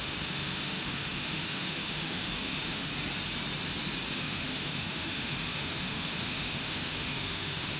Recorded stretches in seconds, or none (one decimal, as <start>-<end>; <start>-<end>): 2.9-4.1